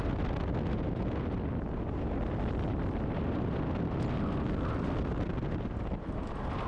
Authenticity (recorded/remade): recorded